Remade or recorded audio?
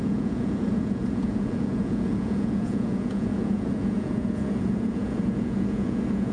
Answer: remade